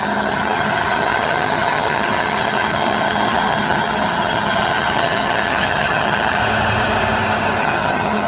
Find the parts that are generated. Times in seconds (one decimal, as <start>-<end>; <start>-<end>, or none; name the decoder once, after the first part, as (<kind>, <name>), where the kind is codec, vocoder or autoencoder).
0.0-6.4 (vocoder, HiFi-GAN); 7.6-8.3